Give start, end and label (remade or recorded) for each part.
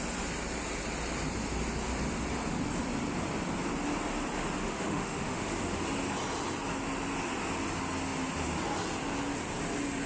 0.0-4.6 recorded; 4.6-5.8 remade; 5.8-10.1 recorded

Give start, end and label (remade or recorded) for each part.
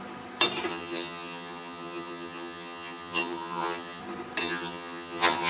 0.0-0.7 recorded; 0.7-4.0 remade; 4.0-4.4 recorded; 4.4-5.5 remade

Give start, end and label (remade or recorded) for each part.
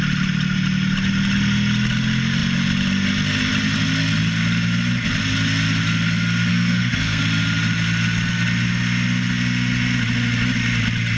0.0-6.5 recorded; 6.5-7.2 remade; 7.2-11.2 recorded